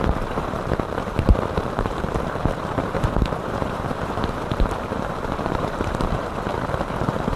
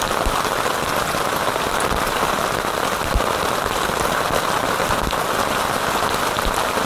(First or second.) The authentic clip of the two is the second